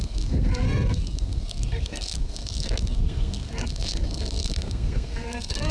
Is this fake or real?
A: fake